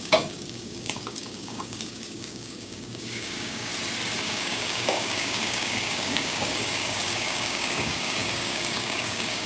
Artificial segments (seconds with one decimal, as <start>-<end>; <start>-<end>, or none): 0.0-3.7; 4.2-9.5